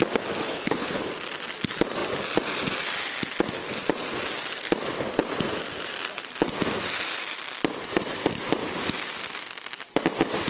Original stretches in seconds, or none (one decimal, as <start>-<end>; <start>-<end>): 0.0-0.4; 1.1-10.5